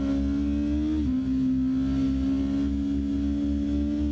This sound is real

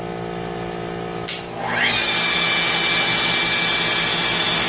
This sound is real